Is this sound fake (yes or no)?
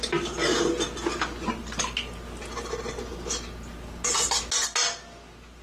no